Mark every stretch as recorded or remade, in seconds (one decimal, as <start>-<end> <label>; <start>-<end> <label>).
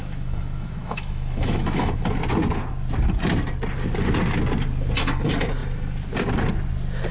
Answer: 0.0-2.0 remade; 2.0-7.1 recorded